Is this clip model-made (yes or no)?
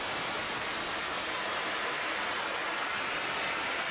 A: no